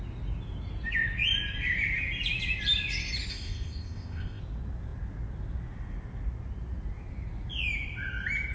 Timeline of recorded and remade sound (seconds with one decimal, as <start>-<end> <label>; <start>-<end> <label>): 0.0-3.3 recorded; 3.3-4.4 remade; 4.4-8.5 recorded